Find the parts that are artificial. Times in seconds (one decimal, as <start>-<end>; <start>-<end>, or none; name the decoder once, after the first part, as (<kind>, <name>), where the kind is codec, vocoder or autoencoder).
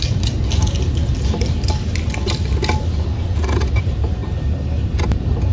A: none